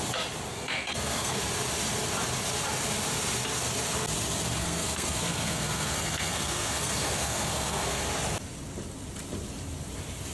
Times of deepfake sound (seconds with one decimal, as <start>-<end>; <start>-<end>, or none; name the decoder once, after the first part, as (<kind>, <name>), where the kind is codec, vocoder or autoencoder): 0.5-1.4 (codec, SNAC); 4.6-8.0